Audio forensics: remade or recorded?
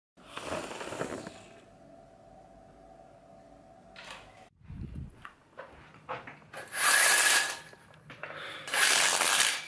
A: recorded